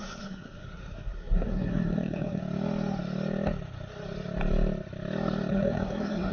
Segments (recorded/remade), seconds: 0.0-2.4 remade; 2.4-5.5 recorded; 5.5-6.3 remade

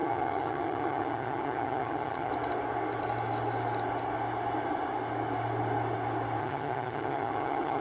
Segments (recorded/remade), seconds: 0.0-2.3 remade; 2.3-6.4 recorded; 6.4-7.8 remade

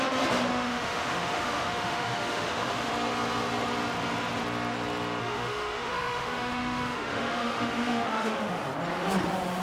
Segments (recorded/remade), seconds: 0.0-0.5 recorded; 0.5-2.9 remade; 2.9-5.2 recorded; 5.2-8.6 remade; 8.6-9.6 recorded

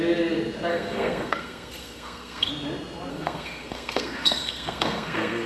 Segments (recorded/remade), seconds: 0.0-0.7 recorded; 0.7-2.5 remade; 2.5-3.1 recorded; 3.1-5.5 remade

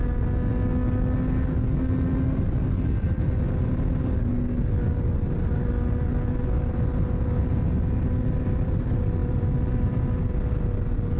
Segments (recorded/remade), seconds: 0.0-9.2 recorded; 9.2-10.2 remade; 10.2-11.2 recorded

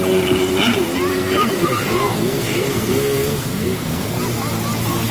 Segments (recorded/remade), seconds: 0.0-1.1 recorded; 1.1-4.2 remade; 4.2-5.1 recorded

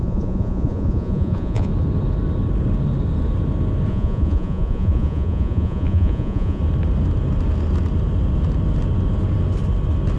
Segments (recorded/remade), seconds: 0.0-1.7 remade; 1.7-3.9 recorded; 3.9-6.6 remade; 6.6-10.2 recorded